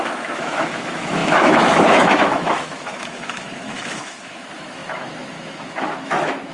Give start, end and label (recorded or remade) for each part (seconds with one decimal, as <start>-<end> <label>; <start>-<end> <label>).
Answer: 0.0-6.5 remade